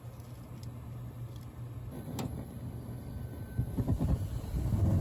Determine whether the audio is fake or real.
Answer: real